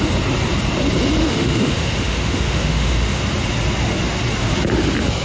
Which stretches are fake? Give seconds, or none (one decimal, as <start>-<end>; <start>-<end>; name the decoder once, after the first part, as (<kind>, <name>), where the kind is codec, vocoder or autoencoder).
1.2-3.2 (autoencoder, DAC-VAE)